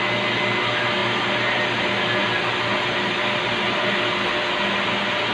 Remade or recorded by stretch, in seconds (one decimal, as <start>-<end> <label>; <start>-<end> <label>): 0.0-5.3 recorded